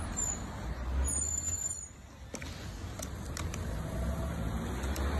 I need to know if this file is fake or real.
real